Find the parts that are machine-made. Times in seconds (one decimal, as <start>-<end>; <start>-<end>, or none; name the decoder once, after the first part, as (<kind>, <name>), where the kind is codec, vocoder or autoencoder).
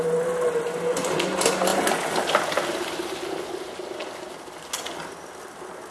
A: none